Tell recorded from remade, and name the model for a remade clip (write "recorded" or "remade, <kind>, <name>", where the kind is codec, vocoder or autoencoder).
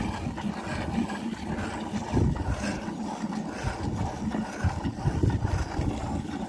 recorded